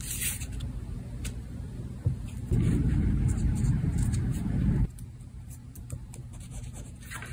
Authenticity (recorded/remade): remade